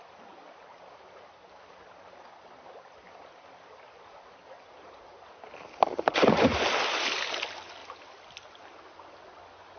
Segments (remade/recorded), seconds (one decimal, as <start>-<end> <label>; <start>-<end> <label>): 0.0-9.8 recorded